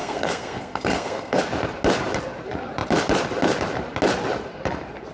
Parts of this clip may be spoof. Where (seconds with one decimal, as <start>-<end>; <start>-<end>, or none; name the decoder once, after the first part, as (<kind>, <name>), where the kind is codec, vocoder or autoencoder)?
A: 0.0-1.4 (codec, SNAC)